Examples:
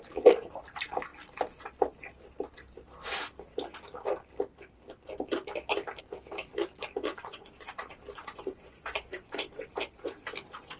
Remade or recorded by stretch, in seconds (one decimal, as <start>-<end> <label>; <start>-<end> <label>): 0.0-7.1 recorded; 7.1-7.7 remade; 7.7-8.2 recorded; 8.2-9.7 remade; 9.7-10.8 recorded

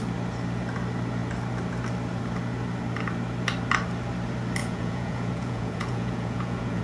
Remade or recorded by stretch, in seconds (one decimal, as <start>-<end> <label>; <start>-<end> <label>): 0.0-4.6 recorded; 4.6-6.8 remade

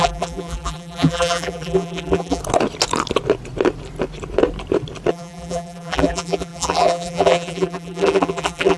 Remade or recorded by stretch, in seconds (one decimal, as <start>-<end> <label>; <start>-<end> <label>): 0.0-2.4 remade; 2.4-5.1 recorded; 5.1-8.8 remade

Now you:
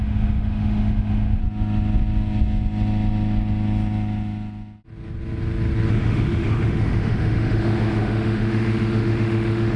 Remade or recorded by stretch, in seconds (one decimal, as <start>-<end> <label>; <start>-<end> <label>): 0.0-1.4 remade; 1.4-5.9 recorded; 5.9-9.8 remade